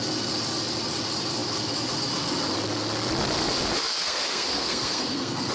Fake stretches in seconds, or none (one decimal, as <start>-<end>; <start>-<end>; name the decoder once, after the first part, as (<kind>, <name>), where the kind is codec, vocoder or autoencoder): 3.8-5.5 (codec, SNAC)